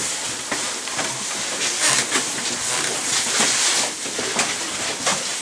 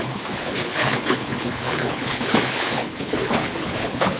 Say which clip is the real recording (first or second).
first